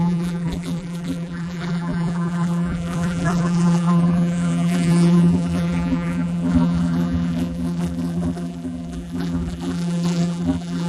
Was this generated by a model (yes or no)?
yes